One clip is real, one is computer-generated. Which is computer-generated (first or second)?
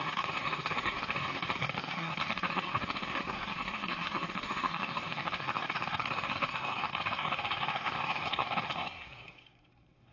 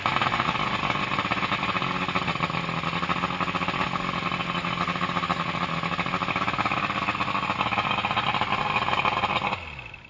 first